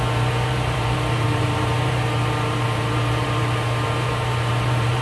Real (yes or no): no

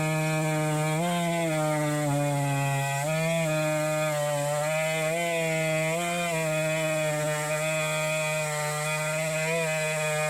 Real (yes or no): yes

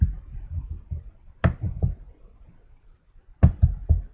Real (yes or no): yes